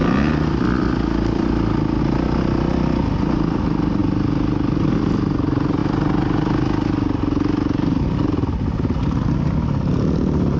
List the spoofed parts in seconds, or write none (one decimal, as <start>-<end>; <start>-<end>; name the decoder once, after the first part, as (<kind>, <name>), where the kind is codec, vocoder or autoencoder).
none